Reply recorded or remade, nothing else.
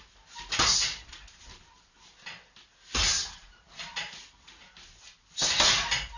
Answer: recorded